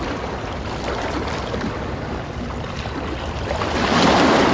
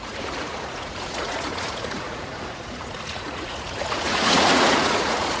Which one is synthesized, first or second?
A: second